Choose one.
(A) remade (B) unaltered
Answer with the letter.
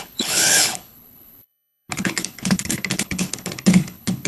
A